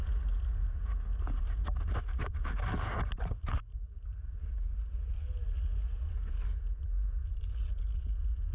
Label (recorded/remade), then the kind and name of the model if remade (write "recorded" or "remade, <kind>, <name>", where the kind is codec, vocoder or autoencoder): recorded